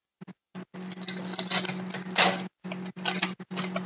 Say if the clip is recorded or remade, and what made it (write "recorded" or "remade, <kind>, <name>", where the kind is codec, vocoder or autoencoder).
recorded